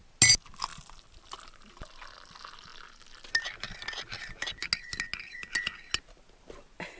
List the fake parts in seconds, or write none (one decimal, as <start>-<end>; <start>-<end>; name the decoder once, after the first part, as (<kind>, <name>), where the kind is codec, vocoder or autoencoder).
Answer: 0.7-1.7 (vocoder, BigVGAN v2)